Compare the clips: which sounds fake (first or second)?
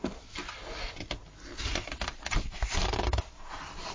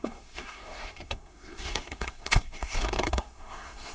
second